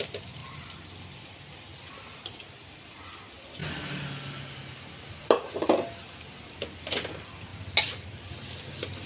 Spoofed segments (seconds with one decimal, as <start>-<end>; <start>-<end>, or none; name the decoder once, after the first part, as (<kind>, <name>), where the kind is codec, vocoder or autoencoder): none

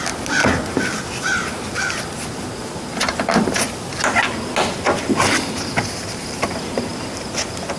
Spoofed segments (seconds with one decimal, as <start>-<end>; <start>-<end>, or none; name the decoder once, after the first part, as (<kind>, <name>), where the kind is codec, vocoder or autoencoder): 0.0-0.4 (vocoder, BigVGAN v2); 3.4-3.9; 6.4-6.9

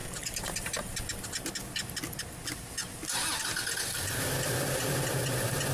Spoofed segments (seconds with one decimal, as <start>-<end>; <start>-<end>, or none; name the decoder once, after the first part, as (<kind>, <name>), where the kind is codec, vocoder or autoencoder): 0.0-0.7 (vocoder, BigVGAN v2)